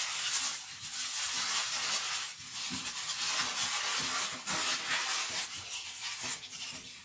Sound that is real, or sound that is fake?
real